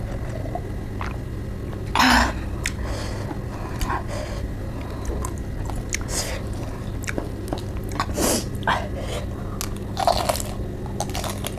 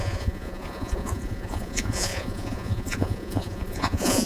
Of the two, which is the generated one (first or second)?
second